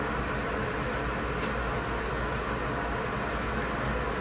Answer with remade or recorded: recorded